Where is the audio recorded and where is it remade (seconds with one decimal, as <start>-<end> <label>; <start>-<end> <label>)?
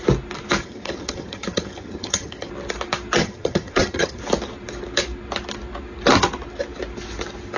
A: 0.0-0.6 recorded; 0.6-2.5 remade; 2.5-3.2 recorded; 3.2-4.2 remade; 4.2-7.6 recorded